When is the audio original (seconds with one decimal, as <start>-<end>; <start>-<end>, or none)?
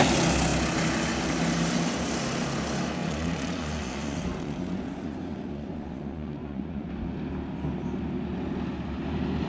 0.0-3.0; 6.9-9.5